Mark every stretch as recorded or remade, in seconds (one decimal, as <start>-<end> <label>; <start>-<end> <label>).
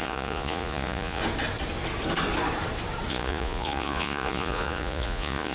0.0-1.2 remade; 1.2-3.1 recorded; 3.1-5.5 remade